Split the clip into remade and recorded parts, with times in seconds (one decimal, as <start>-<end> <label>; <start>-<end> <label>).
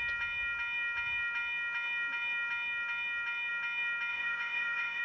0.0-4.1 recorded; 4.1-5.0 remade